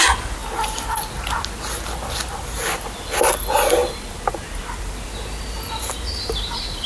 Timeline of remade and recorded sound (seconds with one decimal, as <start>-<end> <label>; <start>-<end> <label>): 0.0-6.9 recorded